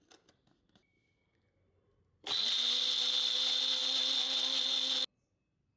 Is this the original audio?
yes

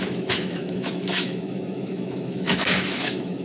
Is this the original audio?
no